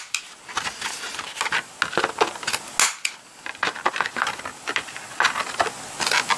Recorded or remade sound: recorded